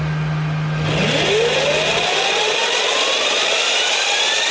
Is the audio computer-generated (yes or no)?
no